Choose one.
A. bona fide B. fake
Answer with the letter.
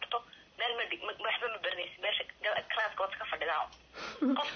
A